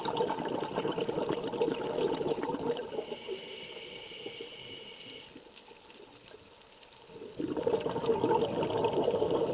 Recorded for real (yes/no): no